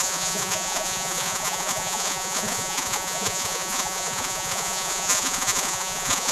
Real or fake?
fake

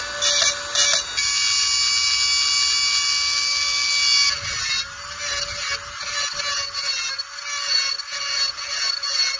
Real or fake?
real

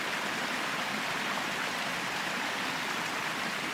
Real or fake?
real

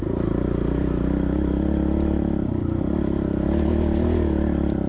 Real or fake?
real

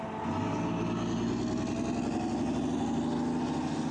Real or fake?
real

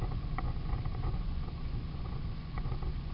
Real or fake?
fake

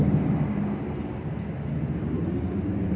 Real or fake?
real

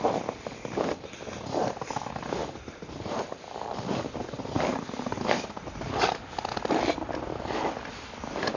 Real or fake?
real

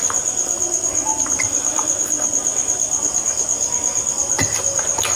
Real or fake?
real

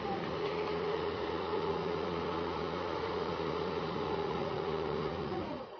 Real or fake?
fake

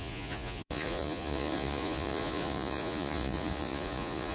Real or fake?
fake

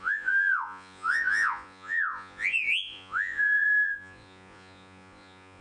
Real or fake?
fake